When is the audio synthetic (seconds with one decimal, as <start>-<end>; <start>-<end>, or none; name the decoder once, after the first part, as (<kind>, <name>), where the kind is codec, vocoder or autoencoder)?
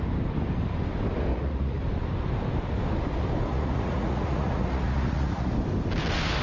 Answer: 1.3-1.8 (vocoder, Vocos); 3.5-5.5